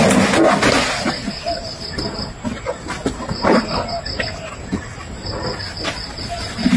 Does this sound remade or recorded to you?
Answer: recorded